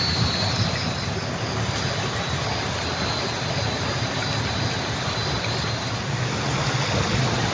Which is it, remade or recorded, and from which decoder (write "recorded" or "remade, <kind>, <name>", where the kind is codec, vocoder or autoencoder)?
recorded